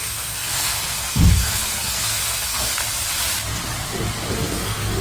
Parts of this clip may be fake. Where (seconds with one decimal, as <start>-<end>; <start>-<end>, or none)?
0.0-2.8; 4.3-5.0